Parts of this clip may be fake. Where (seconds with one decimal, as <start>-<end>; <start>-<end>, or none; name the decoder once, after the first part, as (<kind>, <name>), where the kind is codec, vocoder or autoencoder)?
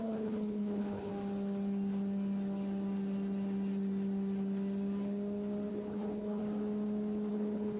0.0-1.1 (codec, HILCodec); 5.7-6.4; 7.3-7.8